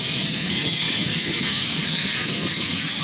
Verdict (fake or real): fake